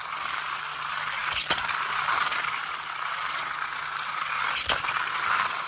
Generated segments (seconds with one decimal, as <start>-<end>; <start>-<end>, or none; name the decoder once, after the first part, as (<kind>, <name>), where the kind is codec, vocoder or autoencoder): none